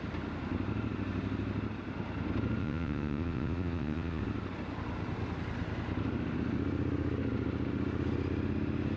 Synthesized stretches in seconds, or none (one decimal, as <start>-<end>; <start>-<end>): 2.6-4.2